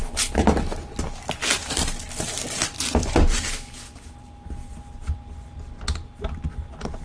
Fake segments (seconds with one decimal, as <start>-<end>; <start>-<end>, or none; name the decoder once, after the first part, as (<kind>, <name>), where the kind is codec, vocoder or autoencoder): 0.0-0.6 (vocoder, BigVGAN v2); 1.6-5.8